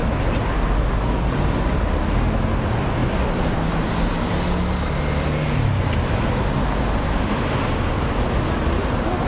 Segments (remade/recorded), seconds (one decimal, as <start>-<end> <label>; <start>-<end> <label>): 0.0-9.3 recorded